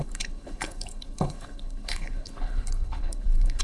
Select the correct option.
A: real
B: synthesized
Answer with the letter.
B